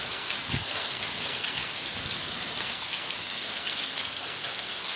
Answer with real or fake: fake